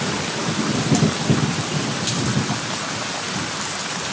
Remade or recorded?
recorded